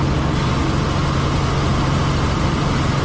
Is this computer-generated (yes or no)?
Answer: no